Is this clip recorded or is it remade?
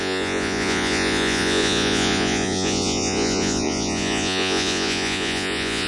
remade